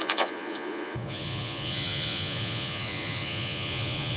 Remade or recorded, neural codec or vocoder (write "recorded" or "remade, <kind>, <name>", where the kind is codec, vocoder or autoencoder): remade, vocoder, Vocos